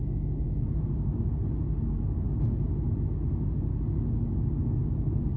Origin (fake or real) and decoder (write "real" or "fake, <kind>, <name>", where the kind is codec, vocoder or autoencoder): real